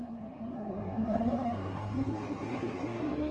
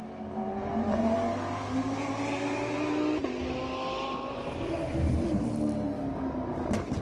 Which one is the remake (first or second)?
first